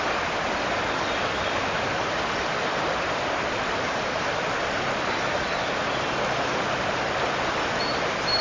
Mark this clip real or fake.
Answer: real